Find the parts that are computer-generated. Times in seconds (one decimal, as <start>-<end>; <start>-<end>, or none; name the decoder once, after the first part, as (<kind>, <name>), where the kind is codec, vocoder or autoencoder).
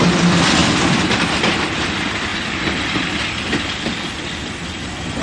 none